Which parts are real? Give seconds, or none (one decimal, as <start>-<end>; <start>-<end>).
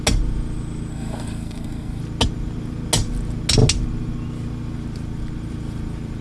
0.0-0.9; 2.0-6.2